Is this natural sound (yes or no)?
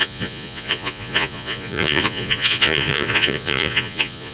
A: no